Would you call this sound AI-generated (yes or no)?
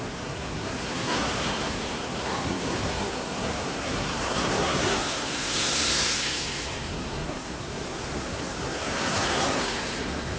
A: yes